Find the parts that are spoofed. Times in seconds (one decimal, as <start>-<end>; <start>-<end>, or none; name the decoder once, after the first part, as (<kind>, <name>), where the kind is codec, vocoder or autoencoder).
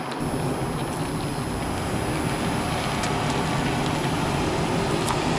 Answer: none